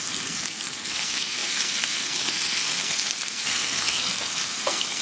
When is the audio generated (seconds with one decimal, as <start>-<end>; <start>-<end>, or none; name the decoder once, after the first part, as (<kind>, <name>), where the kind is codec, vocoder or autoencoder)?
0.0-5.0 (codec, SNAC)